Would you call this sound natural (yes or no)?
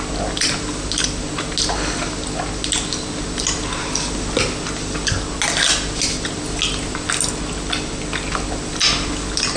yes